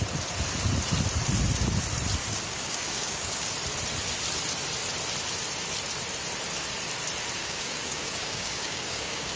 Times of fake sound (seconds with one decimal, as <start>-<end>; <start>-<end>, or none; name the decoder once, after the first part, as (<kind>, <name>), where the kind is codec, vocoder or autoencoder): 2.2-3.5 (codec, DAC); 7.4-9.4